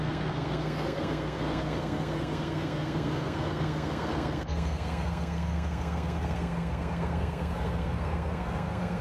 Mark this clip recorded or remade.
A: remade